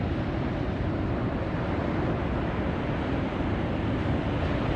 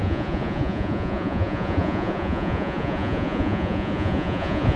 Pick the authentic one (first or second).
first